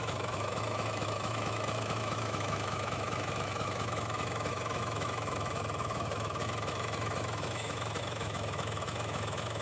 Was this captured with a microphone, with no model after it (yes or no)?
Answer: no